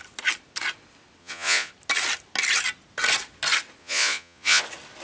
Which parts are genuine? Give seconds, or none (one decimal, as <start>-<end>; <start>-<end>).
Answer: 0.0-1.2; 1.7-3.8; 4.6-5.0